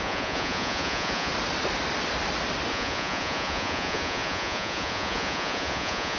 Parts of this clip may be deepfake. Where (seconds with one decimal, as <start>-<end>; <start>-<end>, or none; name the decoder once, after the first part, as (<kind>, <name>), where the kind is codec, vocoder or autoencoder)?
0.0-1.3 (vocoder, Vocos); 2.7-6.2